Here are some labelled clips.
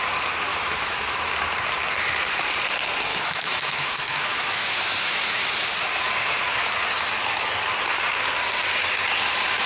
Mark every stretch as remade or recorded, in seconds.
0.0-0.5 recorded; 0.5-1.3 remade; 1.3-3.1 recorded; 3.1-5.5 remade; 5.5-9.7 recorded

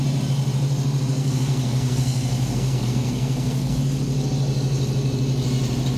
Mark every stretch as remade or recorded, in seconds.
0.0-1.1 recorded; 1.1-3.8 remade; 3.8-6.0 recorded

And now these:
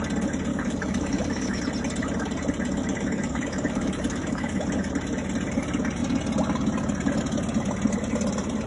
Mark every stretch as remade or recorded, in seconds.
0.0-0.5 recorded; 0.5-1.6 remade; 1.6-2.7 recorded; 2.7-4.9 remade; 4.9-8.7 recorded

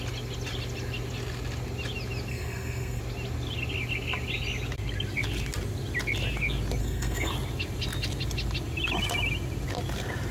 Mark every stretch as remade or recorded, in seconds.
0.0-2.3 recorded; 2.3-3.0 remade; 3.0-6.8 recorded; 6.8-7.3 remade; 7.3-10.3 recorded

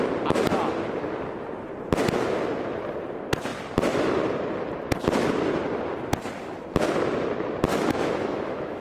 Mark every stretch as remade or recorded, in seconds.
0.0-7.7 recorded; 7.7-8.8 remade

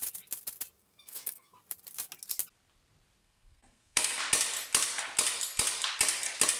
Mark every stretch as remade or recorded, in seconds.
0.0-0.8 recorded; 0.8-1.6 remade; 1.6-3.2 recorded; 3.2-4.2 remade; 4.2-6.6 recorded